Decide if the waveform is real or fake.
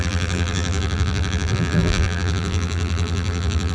fake